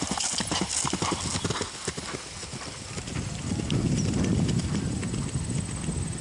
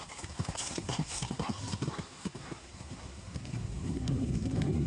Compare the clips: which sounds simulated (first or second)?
second